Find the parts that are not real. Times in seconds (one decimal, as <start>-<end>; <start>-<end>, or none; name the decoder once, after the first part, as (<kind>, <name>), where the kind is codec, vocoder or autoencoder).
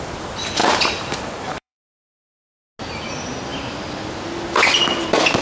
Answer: 0.6-2.0 (vocoder, BigVGAN v2)